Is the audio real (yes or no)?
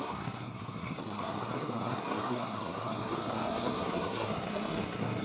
no